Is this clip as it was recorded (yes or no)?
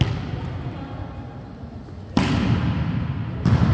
yes